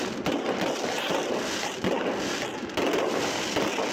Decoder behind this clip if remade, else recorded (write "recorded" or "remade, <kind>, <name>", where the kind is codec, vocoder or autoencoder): recorded